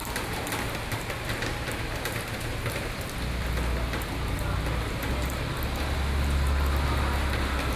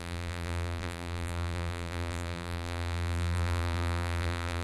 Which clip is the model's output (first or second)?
second